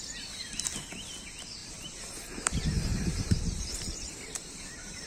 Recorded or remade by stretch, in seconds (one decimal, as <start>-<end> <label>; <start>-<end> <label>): 0.0-1.6 recorded; 1.6-5.1 remade

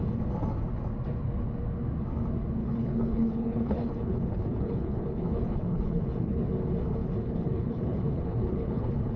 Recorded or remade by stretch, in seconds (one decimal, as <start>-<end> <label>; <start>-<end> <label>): 0.0-2.6 recorded; 2.6-6.4 remade; 6.4-7.0 recorded; 7.0-9.2 remade

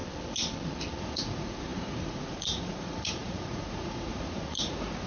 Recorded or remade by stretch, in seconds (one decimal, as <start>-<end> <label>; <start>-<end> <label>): 0.0-1.0 recorded; 1.0-5.1 remade

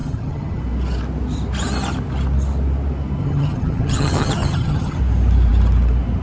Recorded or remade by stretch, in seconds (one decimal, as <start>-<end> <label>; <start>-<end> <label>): 0.0-0.6 remade; 0.6-3.2 recorded; 3.2-5.0 remade; 5.0-6.2 recorded

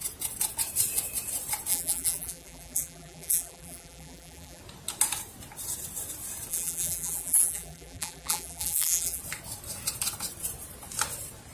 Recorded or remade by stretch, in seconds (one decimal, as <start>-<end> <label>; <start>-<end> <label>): 0.0-1.7 recorded; 1.7-4.6 remade; 4.6-6.5 recorded; 6.5-9.2 remade; 9.2-11.5 recorded

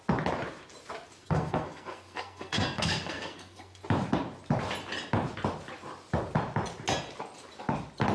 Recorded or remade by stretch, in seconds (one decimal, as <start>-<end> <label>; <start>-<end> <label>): 0.0-1.2 recorded; 1.2-3.8 remade; 3.8-8.1 recorded

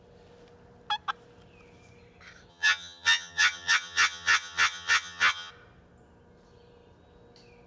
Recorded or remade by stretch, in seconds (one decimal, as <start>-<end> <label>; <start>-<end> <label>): 0.0-2.5 recorded; 2.5-5.5 remade; 5.5-7.7 recorded